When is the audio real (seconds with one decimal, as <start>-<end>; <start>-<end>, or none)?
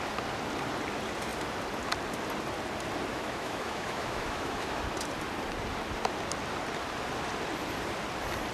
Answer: 0.0-3.1; 4.8-8.5